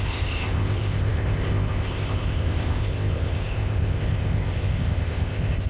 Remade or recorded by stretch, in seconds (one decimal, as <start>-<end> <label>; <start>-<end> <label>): 0.0-5.7 remade